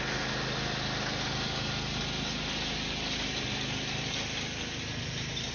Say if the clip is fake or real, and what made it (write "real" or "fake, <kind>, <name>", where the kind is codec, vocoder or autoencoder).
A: real